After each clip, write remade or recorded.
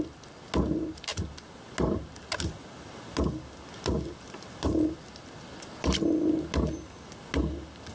recorded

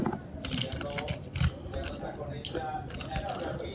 recorded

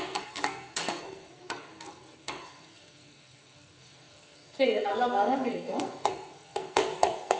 remade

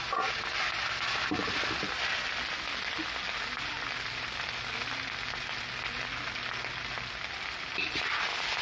recorded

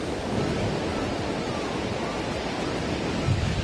recorded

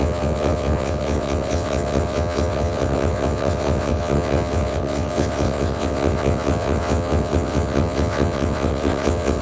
remade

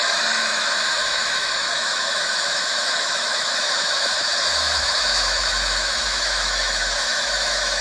remade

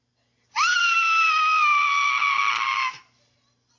recorded